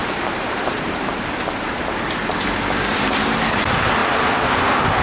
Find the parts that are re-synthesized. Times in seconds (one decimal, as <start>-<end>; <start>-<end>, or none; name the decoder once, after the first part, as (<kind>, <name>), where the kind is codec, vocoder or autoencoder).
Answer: 0.0-1.1 (vocoder, BigVGAN v2)